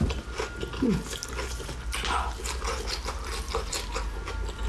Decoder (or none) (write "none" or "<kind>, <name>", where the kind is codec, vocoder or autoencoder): none